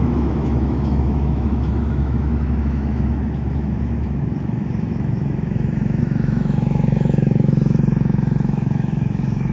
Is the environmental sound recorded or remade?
remade